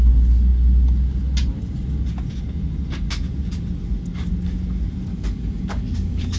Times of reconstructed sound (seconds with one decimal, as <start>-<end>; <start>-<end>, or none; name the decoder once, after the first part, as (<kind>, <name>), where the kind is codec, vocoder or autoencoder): 5.1-6.4 (codec, DAC)